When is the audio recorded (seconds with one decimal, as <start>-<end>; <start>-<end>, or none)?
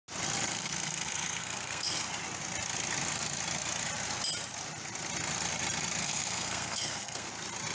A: 0.0-0.5; 2.0-6.0; 7.3-7.7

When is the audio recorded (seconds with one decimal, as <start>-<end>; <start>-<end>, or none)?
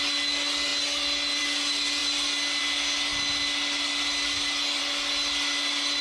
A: 0.0-6.0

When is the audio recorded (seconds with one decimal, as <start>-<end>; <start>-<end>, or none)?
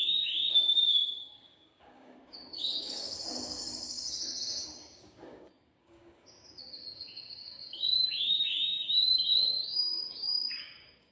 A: none